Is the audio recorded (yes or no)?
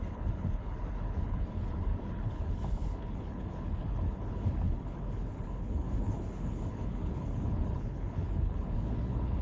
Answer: no